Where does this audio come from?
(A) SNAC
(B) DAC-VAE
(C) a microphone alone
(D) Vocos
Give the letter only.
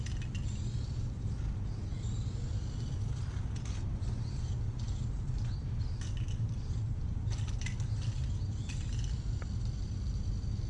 C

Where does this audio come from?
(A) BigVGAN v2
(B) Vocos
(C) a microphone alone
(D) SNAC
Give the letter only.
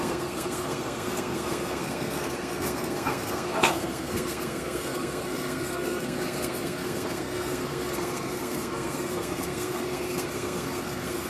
D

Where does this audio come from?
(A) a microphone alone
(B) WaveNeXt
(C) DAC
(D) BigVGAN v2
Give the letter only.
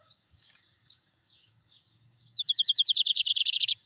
C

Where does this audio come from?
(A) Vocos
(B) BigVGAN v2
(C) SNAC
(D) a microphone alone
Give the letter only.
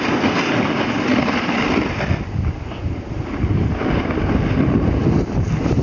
D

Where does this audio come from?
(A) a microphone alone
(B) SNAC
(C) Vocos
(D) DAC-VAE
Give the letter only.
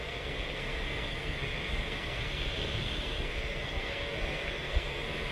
B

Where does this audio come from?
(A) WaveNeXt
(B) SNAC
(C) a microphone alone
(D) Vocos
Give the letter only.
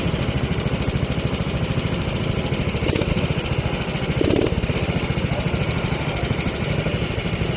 C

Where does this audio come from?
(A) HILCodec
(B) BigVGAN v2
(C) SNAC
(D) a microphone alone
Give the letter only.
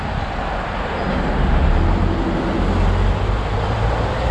D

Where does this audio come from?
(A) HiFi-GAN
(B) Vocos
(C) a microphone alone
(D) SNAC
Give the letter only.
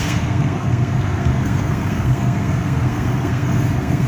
D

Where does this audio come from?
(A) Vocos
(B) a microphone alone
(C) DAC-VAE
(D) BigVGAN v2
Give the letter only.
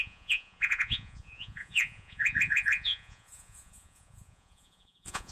A